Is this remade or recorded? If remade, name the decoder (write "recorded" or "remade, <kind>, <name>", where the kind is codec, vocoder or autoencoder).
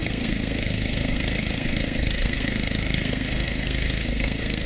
remade, codec, SNAC